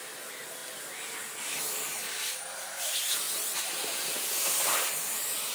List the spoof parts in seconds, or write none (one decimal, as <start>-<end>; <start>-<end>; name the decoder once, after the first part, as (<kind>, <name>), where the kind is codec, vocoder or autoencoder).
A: none